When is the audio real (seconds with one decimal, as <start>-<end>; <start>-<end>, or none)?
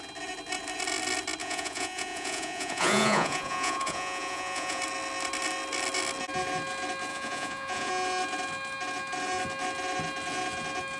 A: 0.0-1.4; 4.8-7.1; 7.9-11.0